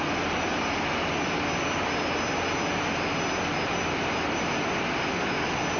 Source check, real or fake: real